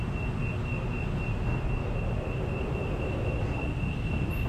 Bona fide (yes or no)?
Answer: yes